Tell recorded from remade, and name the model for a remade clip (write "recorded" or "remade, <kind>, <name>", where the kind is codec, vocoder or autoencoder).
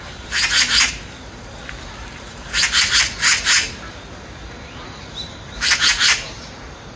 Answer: remade, vocoder, BigVGAN v2